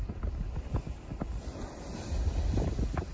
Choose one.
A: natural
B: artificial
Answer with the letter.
A